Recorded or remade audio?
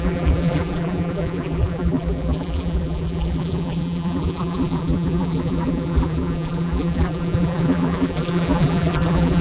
remade